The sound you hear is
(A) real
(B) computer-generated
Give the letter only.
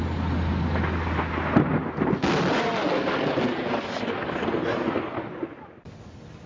A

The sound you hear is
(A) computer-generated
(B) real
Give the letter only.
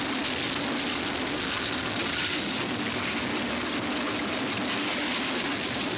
B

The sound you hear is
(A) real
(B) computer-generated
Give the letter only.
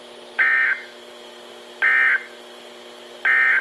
A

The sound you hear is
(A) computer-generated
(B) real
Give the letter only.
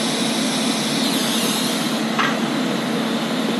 B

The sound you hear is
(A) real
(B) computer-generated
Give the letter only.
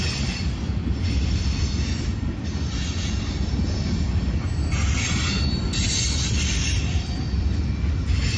A